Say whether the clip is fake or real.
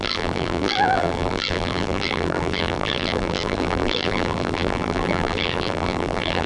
fake